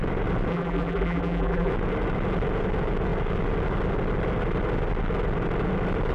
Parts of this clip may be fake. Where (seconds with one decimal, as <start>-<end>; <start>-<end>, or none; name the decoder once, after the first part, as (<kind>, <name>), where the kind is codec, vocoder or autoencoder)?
0.5-1.7 (vocoder, BigVGAN v2)